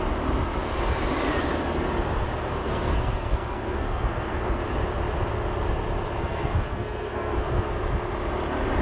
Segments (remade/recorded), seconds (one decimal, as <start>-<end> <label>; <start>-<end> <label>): 0.0-2.6 recorded; 2.6-4.6 remade; 4.6-6.2 recorded; 6.2-7.7 remade; 7.7-8.8 recorded